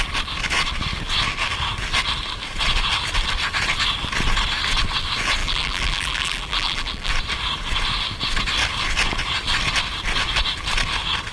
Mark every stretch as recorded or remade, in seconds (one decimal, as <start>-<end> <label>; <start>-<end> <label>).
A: 0.0-5.4 recorded; 5.4-7.1 remade; 7.1-11.3 recorded